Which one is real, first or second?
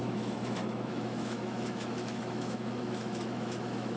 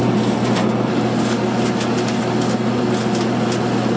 second